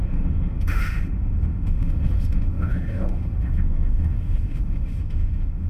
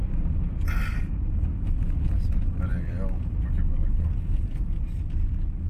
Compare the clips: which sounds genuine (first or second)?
second